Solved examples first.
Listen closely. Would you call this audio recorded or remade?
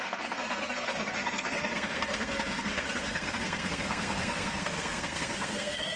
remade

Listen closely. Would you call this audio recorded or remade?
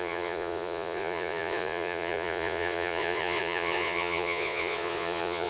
remade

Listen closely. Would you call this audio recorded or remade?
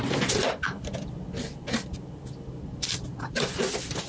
recorded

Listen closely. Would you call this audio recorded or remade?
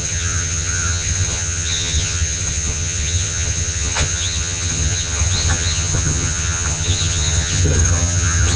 remade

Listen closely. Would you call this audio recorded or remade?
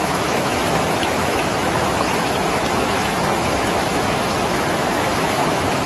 remade